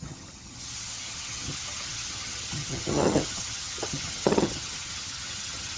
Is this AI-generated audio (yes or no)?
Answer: yes